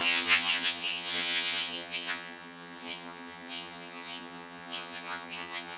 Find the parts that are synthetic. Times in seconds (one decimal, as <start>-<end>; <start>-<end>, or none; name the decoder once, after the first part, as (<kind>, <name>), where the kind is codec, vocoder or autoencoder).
0.0-5.8 (vocoder, HiFi-GAN)